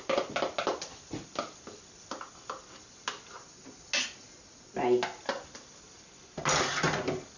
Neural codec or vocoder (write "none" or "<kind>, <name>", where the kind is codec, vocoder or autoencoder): none